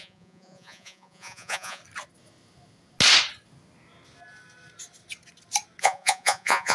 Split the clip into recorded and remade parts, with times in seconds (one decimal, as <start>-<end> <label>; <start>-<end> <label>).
0.0-1.8 remade; 1.8-5.8 recorded; 5.8-6.7 remade